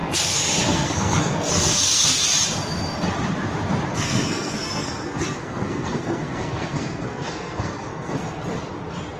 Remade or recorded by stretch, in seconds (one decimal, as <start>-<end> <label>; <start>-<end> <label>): 0.0-2.2 remade; 2.2-3.9 recorded; 3.9-8.4 remade; 8.4-9.2 recorded